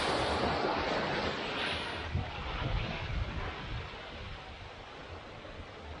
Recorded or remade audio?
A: recorded